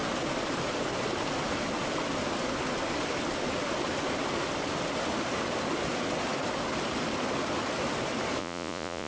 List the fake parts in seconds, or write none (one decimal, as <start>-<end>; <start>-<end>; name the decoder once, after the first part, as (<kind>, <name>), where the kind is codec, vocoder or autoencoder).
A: 8.4-9.1 (vocoder, Vocos)